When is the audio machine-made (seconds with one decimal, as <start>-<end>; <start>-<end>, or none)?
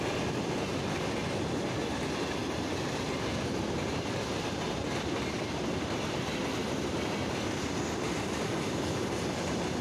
none